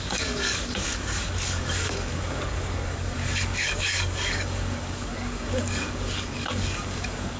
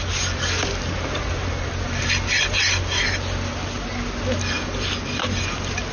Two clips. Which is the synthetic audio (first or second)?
first